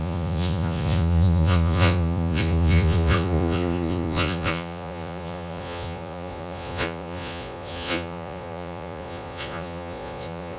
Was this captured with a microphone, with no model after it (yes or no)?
no